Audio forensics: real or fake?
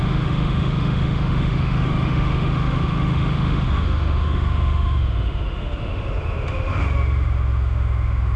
fake